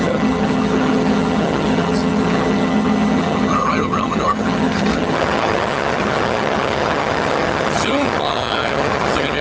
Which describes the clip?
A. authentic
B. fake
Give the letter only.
B